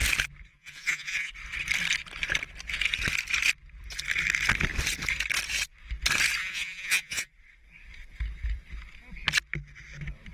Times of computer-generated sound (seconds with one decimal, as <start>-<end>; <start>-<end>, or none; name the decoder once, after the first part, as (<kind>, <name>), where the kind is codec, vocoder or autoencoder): 0.5-1.3 (vocoder, Vocos); 6.4-7.3